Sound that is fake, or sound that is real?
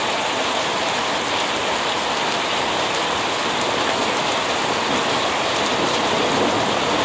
real